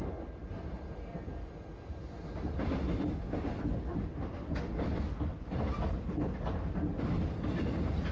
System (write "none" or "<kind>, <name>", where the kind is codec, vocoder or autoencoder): none